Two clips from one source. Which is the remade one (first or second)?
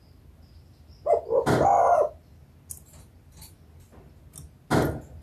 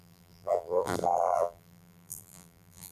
second